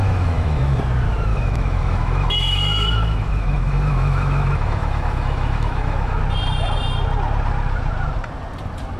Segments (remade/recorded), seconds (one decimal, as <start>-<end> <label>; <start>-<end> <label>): 0.0-0.8 remade; 0.8-1.3 recorded; 1.3-6.2 remade; 6.2-9.0 recorded